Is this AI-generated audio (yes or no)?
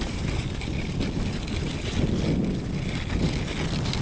no